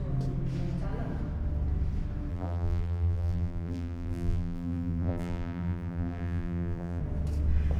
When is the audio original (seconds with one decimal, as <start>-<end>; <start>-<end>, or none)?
0.0-2.3; 7.0-7.8